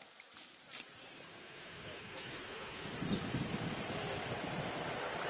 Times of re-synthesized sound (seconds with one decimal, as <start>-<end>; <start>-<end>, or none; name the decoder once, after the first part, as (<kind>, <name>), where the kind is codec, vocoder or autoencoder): 1.3-2.9 (autoencoder, DAC-VAE)